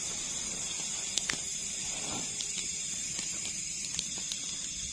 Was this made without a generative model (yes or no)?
yes